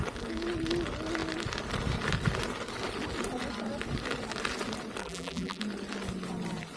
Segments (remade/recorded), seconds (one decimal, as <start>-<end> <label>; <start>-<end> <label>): 0.0-5.0 recorded; 5.0-5.6 remade; 5.6-6.8 recorded

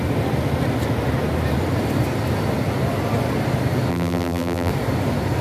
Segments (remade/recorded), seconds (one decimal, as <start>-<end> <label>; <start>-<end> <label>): 0.0-3.9 recorded; 3.9-4.7 remade; 4.7-5.4 recorded

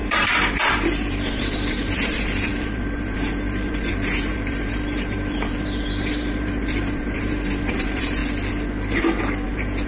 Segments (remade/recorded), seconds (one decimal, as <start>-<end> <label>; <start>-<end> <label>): 0.0-8.2 remade; 8.2-9.2 recorded; 9.2-9.9 remade

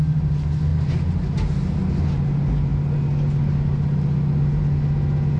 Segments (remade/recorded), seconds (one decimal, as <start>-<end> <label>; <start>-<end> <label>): 0.0-5.4 recorded

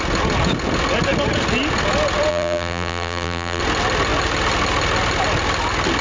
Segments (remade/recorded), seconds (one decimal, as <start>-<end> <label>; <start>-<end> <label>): 0.0-2.3 recorded; 2.3-3.6 remade; 3.6-6.0 recorded

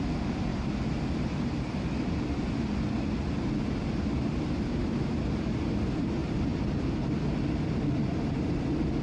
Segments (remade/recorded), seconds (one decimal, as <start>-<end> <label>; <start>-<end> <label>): 0.0-6.2 recorded; 6.2-7.1 remade; 7.1-9.0 recorded